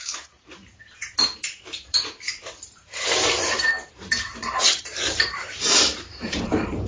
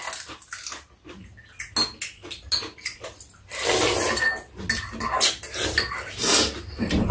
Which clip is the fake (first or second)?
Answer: first